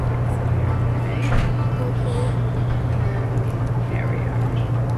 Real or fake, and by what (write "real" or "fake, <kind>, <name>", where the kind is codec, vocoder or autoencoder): real